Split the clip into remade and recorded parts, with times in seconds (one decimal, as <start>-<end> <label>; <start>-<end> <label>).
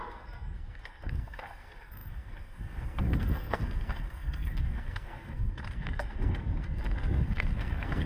0.0-8.1 remade